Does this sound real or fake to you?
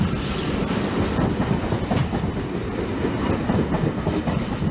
real